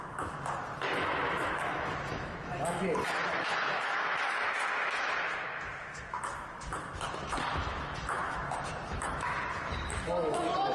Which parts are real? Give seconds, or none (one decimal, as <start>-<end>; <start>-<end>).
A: none